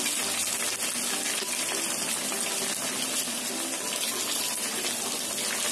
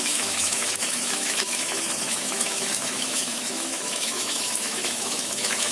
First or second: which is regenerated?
second